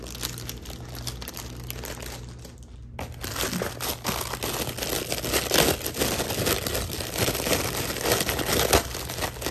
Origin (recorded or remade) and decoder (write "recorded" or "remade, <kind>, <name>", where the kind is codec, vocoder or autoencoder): recorded